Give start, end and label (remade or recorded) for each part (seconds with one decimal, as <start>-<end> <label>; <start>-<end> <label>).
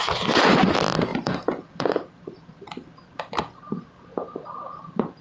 0.0-1.1 recorded; 1.1-1.8 remade; 1.8-5.2 recorded